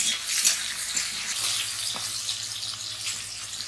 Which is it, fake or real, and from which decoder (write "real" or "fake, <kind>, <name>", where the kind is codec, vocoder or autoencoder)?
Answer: real